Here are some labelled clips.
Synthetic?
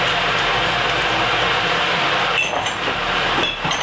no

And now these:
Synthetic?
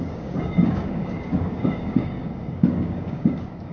yes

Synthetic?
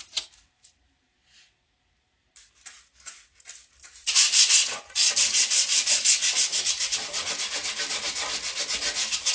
no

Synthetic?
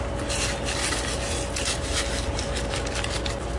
no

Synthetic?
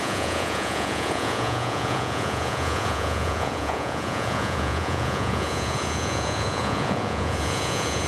yes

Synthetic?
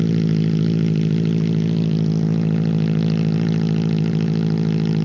no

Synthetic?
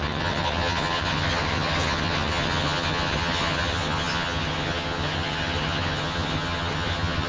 yes